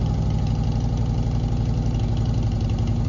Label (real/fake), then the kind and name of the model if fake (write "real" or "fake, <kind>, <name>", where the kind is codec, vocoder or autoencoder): real